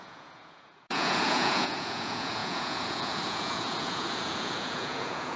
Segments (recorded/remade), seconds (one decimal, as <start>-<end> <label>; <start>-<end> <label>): 0.0-5.4 remade